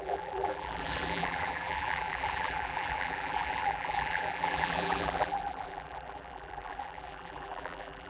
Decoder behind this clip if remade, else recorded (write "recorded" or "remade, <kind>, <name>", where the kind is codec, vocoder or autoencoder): remade, vocoder, BigVGAN v2